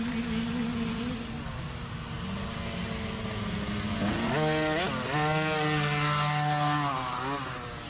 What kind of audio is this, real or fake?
real